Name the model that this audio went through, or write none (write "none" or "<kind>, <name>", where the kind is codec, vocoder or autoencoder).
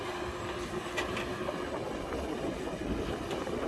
none